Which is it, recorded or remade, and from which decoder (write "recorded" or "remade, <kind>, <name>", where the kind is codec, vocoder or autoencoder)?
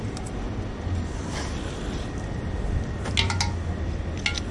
recorded